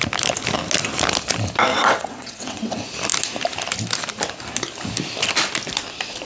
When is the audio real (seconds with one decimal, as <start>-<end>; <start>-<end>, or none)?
0.0-1.7; 2.7-6.3